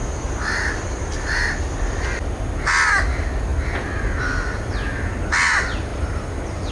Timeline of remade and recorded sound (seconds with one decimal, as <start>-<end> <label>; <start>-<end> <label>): 0.0-1.5 remade; 1.5-5.9 recorded; 5.9-6.7 remade